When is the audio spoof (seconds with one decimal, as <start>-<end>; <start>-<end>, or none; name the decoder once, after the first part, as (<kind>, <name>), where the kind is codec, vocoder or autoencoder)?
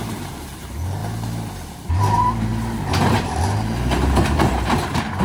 0.0-1.0 (vocoder, BigVGAN v2); 1.9-2.5; 3.1-5.2